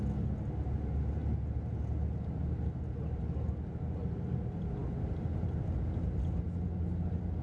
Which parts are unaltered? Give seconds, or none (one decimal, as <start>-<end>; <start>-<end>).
0.0-7.4

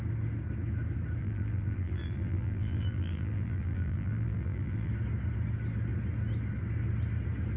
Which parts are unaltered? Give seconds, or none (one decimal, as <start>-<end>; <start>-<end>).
0.0-1.2; 4.9-7.6

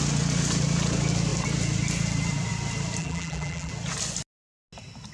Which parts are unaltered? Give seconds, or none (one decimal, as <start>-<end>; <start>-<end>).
0.0-3.0; 3.7-5.1